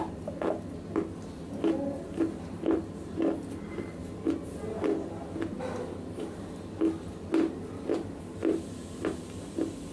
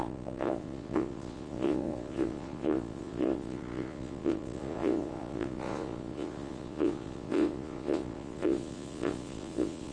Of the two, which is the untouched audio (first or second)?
first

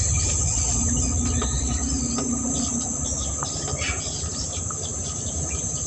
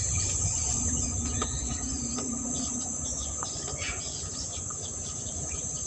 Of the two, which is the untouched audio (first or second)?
first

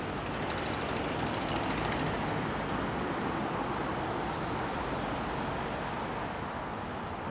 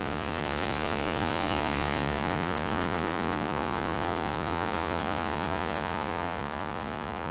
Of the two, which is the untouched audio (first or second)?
first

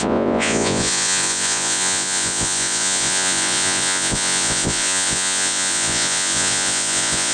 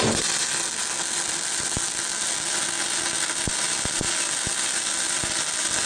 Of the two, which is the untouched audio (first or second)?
second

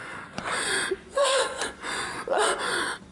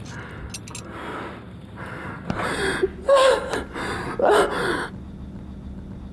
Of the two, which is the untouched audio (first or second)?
second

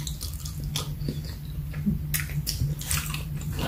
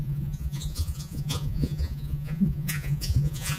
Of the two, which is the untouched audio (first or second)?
first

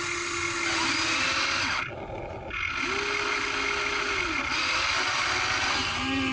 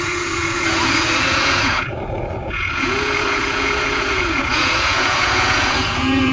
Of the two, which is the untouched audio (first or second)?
first